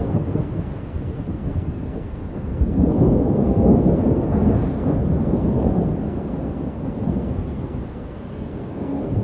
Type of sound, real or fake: fake